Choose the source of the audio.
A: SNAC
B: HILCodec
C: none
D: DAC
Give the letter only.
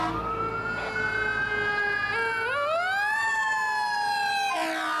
C